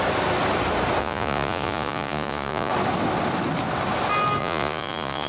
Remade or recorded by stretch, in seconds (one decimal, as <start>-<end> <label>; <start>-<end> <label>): 0.0-1.0 recorded; 1.0-2.7 remade; 2.7-4.4 recorded; 4.4-5.3 remade